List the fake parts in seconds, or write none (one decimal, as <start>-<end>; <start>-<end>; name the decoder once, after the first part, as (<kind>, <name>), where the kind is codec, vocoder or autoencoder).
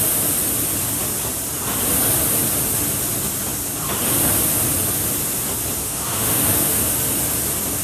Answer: 5.8-6.9 (autoencoder, DAC-VAE)